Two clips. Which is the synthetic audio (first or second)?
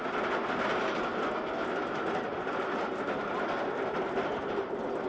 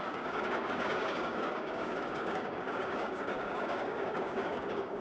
second